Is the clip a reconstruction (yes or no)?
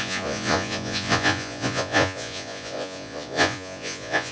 yes